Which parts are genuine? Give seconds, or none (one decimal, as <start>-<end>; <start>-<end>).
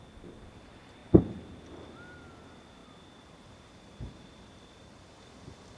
0.0-1.0; 1.6-2.8; 4.6-5.8